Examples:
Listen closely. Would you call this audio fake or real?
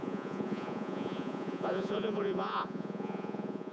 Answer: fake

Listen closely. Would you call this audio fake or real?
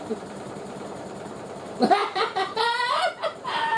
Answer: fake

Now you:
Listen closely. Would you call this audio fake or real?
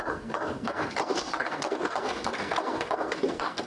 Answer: fake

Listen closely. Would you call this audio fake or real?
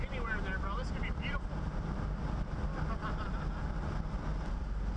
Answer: real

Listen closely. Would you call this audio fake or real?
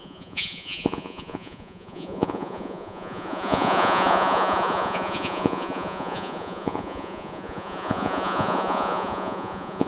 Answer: fake